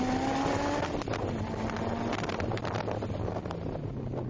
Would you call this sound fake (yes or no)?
no